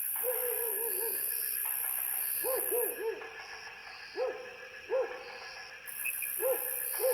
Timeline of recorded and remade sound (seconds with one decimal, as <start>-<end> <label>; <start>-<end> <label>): 0.0-0.7 recorded; 0.7-1.3 remade; 1.3-2.2 recorded; 2.2-3.1 remade; 3.1-7.1 recorded